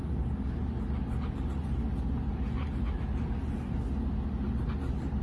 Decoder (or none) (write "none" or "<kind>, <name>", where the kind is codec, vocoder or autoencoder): none